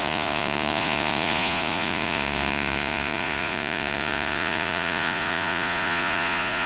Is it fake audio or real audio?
fake